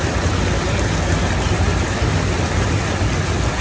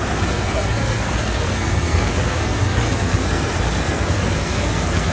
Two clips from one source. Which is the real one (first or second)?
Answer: first